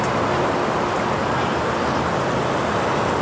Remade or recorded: recorded